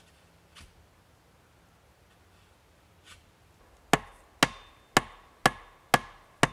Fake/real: real